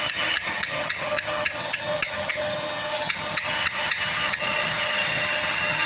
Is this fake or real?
fake